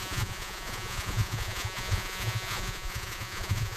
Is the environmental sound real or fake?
fake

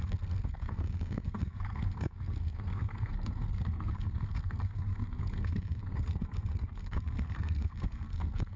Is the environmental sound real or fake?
fake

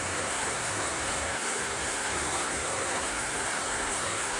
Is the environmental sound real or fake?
fake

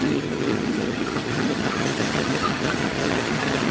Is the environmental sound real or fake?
fake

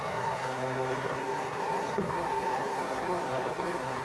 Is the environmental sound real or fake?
fake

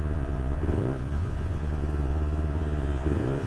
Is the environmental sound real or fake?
fake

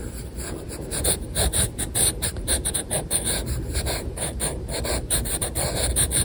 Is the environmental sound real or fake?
fake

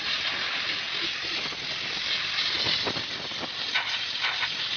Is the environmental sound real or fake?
fake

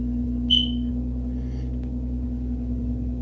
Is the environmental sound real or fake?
real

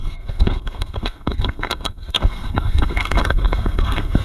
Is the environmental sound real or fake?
fake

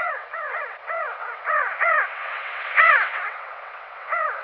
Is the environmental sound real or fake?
fake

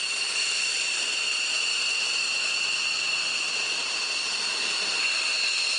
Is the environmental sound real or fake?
real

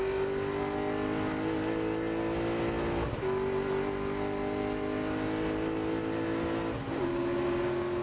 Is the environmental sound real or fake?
real